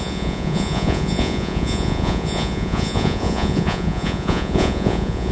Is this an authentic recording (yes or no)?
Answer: no